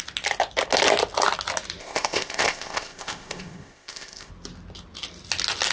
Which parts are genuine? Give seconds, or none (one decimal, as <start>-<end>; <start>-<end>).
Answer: 0.0-1.8; 4.3-5.7